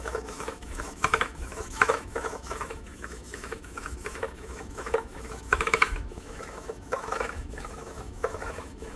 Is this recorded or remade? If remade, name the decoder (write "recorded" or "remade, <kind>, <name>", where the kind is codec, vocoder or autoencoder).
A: remade, autoencoder, DAC-VAE